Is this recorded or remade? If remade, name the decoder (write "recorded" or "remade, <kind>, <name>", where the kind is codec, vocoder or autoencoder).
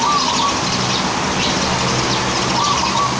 recorded